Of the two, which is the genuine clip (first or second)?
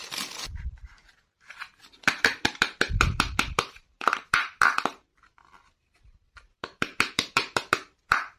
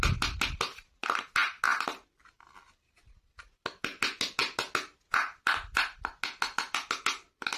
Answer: second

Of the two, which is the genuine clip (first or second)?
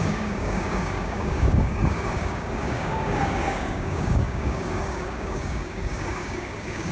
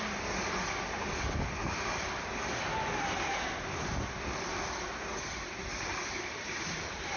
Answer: second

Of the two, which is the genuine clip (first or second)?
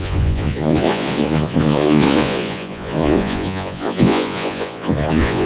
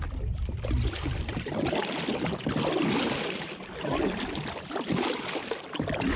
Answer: second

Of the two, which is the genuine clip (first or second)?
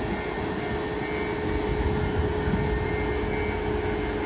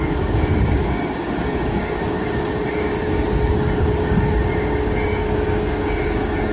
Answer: first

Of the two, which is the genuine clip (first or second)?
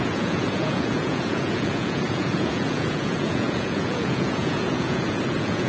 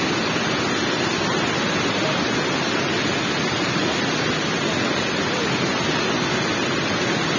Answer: second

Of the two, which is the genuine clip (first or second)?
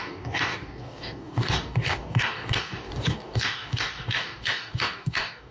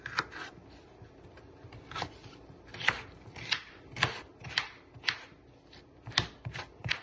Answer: second